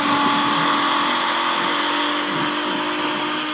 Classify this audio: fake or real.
real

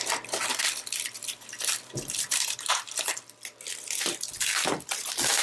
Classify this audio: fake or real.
fake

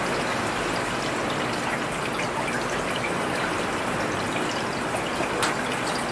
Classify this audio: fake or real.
real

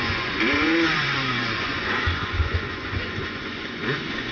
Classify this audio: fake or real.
fake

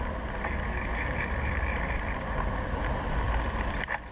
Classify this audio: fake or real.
real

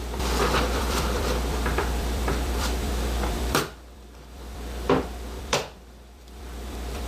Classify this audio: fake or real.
fake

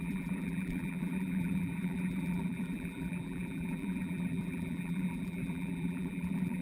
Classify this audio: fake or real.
fake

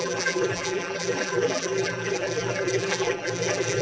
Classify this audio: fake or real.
fake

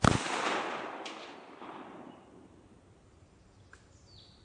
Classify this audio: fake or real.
real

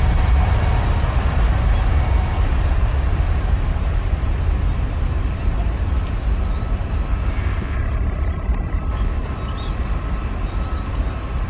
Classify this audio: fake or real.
real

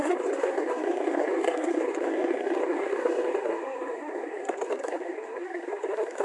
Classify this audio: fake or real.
fake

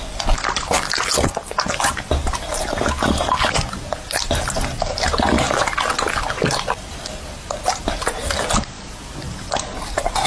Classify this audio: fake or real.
real